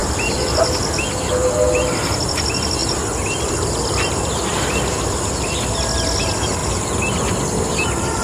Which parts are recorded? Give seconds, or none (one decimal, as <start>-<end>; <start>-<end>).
0.8-2.8; 5.7-6.6; 7.4-8.2